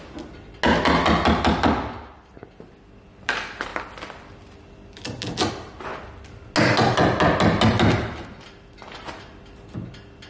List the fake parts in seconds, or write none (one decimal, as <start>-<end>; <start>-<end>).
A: none